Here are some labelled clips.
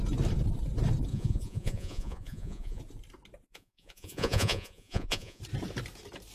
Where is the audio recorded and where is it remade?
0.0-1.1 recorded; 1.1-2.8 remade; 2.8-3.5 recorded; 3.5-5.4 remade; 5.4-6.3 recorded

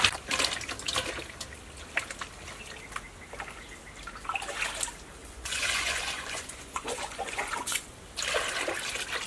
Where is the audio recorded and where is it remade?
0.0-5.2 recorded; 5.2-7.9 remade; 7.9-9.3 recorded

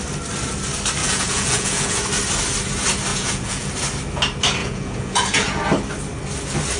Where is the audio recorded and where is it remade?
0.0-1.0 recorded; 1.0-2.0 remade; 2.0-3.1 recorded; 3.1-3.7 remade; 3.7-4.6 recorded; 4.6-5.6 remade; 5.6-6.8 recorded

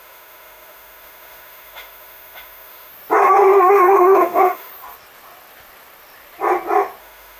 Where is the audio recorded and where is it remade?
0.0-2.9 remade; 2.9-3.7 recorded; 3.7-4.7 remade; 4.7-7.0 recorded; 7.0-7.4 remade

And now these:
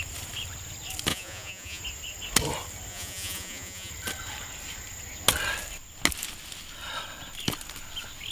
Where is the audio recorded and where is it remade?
0.0-1.1 recorded; 1.1-1.8 remade; 1.8-2.9 recorded; 2.9-3.9 remade; 3.9-8.3 recorded